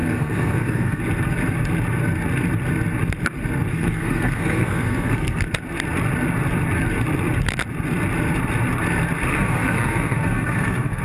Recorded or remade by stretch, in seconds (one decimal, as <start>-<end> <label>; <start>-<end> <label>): 0.0-1.0 remade; 1.0-3.7 recorded; 3.7-5.4 remade; 5.4-9.3 recorded; 9.3-11.0 remade